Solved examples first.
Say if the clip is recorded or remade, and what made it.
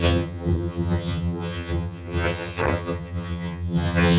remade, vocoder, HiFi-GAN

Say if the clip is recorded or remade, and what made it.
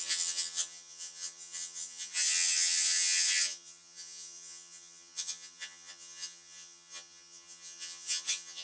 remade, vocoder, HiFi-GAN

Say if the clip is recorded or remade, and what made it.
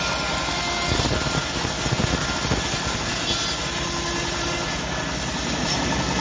recorded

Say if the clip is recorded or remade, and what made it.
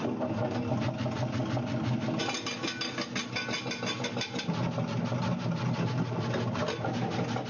recorded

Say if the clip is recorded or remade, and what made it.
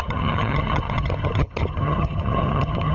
remade, vocoder, HiFi-GAN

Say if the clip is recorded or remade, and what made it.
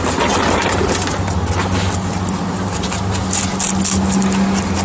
recorded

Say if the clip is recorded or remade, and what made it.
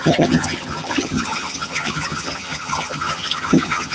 remade, vocoder, HiFi-GAN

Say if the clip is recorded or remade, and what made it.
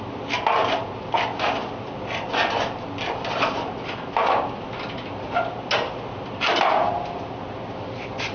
recorded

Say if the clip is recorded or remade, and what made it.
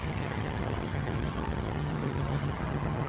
remade, vocoder, HiFi-GAN